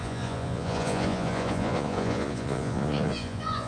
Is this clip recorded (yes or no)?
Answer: no